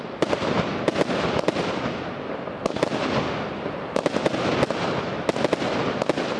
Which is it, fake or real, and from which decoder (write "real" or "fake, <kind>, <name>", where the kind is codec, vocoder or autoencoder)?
real